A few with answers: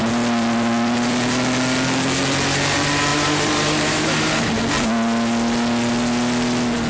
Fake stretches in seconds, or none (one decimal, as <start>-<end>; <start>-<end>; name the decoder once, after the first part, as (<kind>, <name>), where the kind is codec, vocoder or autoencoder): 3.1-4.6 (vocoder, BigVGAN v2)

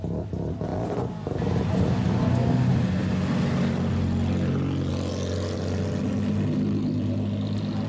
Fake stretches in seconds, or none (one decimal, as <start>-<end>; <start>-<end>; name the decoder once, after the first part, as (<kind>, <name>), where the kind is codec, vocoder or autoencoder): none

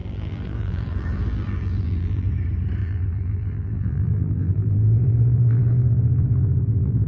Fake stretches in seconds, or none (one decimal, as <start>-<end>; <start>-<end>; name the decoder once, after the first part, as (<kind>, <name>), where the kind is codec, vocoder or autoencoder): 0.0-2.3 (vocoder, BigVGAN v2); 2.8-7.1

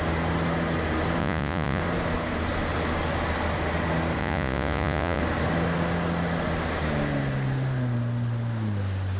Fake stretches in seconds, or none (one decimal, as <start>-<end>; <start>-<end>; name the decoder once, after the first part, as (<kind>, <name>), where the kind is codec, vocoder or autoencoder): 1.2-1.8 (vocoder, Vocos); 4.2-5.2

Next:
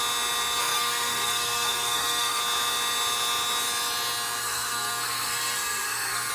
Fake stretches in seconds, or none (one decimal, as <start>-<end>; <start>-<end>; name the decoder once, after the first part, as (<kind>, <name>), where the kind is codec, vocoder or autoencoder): 0.6-2.4 (codec, SNAC); 4.4-6.3

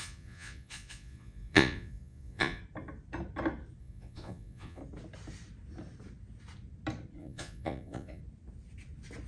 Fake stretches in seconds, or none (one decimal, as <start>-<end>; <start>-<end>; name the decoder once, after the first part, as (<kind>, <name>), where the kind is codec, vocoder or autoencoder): 0.0-2.6 (vocoder, Vocos); 3.8-4.8; 7.2-8.2

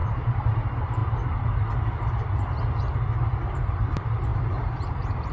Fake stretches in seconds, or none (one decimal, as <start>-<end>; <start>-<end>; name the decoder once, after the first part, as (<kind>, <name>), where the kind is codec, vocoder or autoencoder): 0.0-0.5 (vocoder, BigVGAN v2); 4.3-5.3